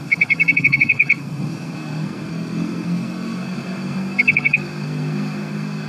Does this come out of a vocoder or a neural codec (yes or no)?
yes